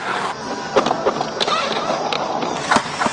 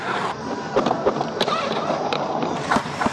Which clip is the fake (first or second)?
second